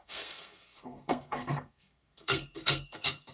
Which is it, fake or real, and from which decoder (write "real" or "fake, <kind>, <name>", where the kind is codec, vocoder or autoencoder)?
fake, codec, SNAC